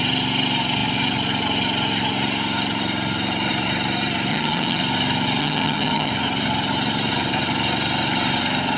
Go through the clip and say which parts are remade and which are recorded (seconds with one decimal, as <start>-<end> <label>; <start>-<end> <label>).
0.0-4.3 recorded; 4.3-4.8 remade; 4.8-5.4 recorded; 5.4-6.1 remade; 6.1-8.8 recorded